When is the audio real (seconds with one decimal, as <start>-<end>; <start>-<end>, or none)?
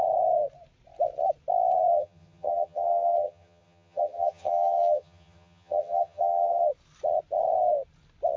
0.0-1.9; 6.7-8.4